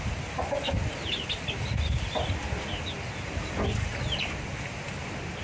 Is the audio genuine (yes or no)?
yes